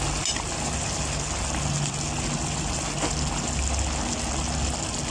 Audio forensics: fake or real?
real